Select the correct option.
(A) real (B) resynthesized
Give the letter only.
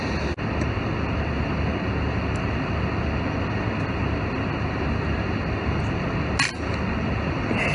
A